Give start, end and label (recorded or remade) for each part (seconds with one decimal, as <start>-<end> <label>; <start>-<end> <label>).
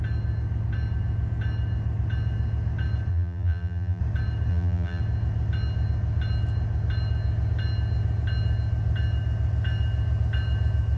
0.0-3.1 recorded; 3.1-4.0 remade; 4.0-4.5 recorded; 4.5-5.0 remade; 5.0-11.0 recorded